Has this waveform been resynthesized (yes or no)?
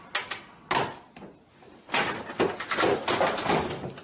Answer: no